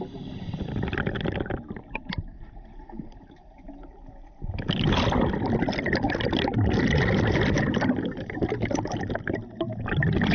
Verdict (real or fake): real